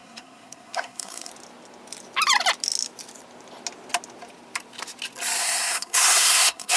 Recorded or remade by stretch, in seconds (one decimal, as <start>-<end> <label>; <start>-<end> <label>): 0.0-1.3 remade; 1.3-5.4 recorded; 5.4-6.8 remade